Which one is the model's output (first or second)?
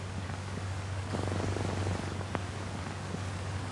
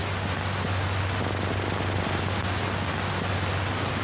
first